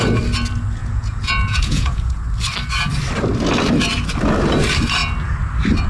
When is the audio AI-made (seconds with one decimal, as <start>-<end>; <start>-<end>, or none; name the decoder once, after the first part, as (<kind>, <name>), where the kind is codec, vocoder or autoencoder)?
0.8-2.2 (vocoder, Vocos)